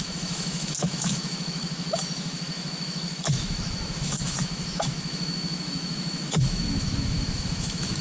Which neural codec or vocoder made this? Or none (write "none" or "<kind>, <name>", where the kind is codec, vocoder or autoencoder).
autoencoder, DAC-VAE